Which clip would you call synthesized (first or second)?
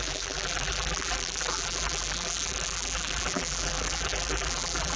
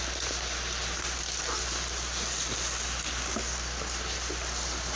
first